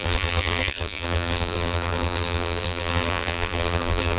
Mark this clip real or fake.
fake